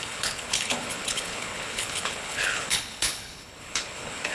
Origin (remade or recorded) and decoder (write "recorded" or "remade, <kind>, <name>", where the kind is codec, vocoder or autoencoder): remade, codec, HILCodec